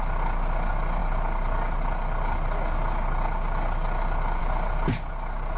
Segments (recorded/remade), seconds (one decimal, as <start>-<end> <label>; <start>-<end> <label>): 0.0-5.6 recorded